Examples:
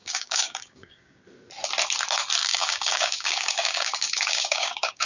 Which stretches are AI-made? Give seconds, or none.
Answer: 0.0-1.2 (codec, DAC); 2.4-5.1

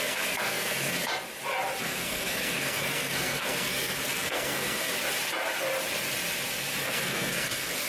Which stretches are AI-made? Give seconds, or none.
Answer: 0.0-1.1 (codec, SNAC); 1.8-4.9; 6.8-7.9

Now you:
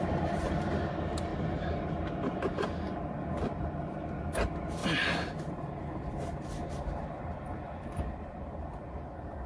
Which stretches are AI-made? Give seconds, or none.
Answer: 0.0-1.3 (vocoder, BigVGAN v2); 1.9-4.8; 5.5-9.5

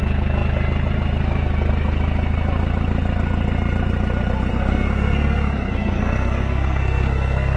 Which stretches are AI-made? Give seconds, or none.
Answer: 4.5-7.6 (codec, SNAC)

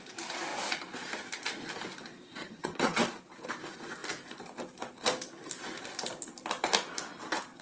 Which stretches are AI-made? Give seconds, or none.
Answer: 2.4-3.0 (vocoder, HiFi-GAN)